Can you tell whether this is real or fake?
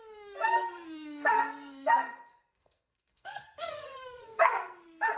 fake